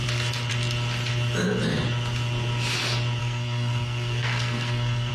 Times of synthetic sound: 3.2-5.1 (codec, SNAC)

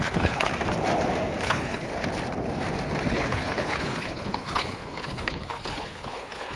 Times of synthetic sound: 0.0-0.5 (codec, HILCodec); 1.4-1.9; 3.1-6.6

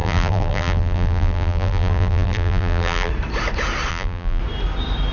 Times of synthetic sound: 0.0-3.1 (vocoder, BigVGAN v2); 3.9-4.4

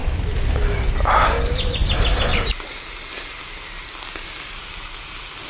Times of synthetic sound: none